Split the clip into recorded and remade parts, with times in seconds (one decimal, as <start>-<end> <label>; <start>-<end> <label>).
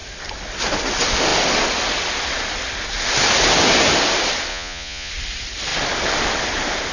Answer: 0.0-4.5 recorded; 4.5-5.1 remade; 5.1-6.9 recorded